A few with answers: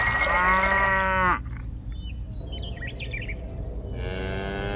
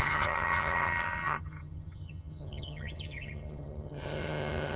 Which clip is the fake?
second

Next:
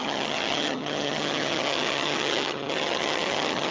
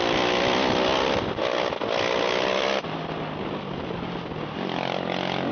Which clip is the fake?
first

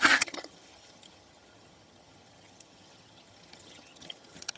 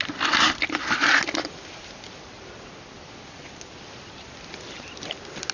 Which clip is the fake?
first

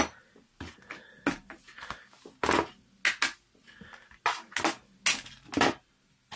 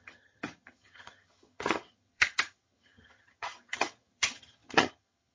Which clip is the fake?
second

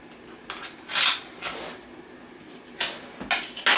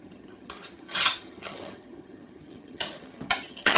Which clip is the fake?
second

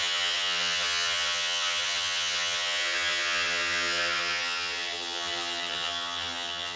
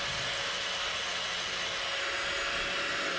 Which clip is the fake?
first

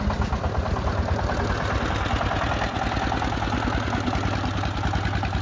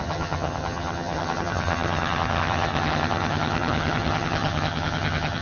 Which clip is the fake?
second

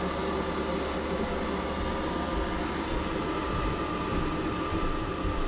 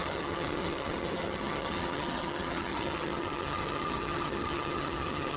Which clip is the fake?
second